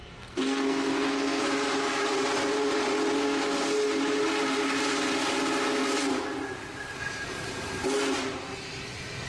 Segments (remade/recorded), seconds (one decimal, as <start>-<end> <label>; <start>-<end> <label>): 0.0-1.4 remade; 1.4-9.3 recorded